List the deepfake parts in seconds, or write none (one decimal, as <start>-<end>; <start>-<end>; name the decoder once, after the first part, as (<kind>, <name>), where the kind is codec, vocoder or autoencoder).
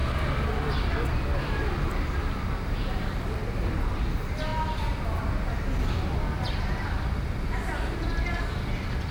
none